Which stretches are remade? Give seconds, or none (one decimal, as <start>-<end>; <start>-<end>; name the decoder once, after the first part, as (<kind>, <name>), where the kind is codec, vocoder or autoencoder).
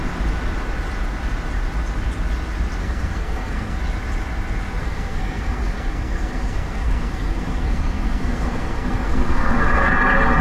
2.8-3.8 (codec, SNAC); 4.8-9.9